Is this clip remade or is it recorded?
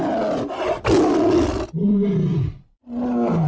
recorded